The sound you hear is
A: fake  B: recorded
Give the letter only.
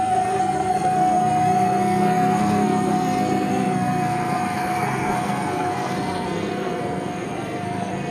A